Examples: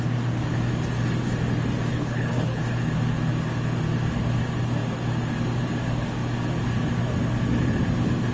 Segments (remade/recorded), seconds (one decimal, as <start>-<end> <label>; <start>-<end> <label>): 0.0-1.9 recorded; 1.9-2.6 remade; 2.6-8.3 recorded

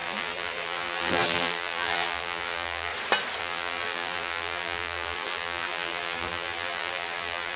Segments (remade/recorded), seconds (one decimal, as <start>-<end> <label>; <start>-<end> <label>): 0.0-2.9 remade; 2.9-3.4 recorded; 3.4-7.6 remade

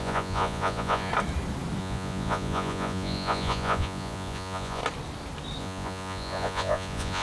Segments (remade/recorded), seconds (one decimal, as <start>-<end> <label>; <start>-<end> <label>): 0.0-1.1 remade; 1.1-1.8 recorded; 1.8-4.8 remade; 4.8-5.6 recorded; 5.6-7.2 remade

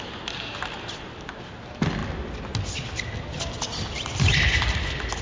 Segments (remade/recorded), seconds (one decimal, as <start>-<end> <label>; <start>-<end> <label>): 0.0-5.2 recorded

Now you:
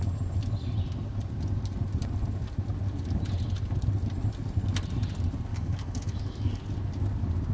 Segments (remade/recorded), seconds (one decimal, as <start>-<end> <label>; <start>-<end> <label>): 0.0-5.5 recorded; 5.5-6.6 remade; 6.6-7.5 recorded

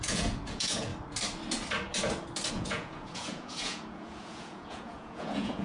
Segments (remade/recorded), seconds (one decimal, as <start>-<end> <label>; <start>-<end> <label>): 0.0-0.9 remade; 0.9-2.5 recorded; 2.5-5.6 remade